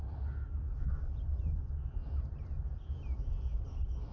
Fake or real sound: real